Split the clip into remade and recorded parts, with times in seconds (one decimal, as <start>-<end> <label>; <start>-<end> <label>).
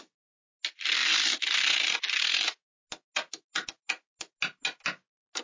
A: 0.0-5.4 recorded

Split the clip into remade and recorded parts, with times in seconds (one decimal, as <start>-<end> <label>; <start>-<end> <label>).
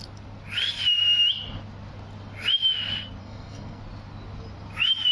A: 0.0-3.2 recorded; 3.2-3.8 remade; 3.8-5.1 recorded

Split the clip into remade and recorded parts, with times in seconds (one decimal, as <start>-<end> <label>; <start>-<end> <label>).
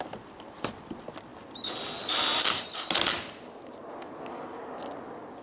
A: 0.0-5.4 recorded